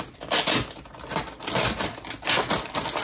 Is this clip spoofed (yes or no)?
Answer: no